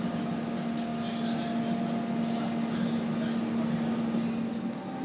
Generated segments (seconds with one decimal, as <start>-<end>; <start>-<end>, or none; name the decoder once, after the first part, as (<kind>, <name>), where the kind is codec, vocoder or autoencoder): none

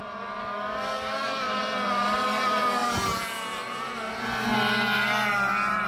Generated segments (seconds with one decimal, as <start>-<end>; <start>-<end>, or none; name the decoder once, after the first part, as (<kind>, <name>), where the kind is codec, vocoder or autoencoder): 0.4-1.6 (codec, DAC)